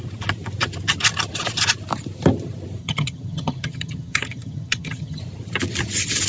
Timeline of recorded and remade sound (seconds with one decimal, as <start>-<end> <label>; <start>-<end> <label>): 0.0-2.8 recorded; 2.8-5.2 remade; 5.2-6.3 recorded